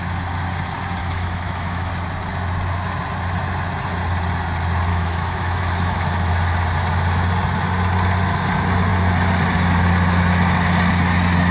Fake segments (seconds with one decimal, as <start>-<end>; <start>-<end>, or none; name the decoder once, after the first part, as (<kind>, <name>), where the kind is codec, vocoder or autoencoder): 1.0-1.9 (autoencoder, DAC-VAE); 4.9-6.3